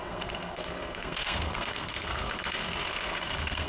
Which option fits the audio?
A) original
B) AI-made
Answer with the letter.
B